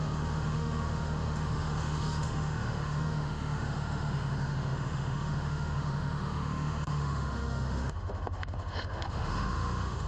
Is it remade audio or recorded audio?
remade